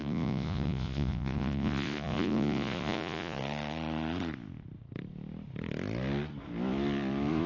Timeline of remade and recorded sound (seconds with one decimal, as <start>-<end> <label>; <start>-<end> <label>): 0.0-3.4 remade; 3.4-7.5 recorded